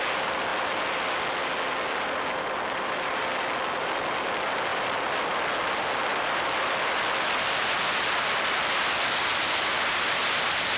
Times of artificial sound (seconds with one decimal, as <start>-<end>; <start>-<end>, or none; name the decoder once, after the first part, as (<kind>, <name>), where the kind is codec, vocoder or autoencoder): none